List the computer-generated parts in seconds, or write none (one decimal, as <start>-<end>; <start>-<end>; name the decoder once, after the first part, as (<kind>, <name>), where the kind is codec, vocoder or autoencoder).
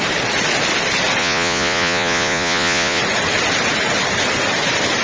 1.2-3.0 (vocoder, Vocos)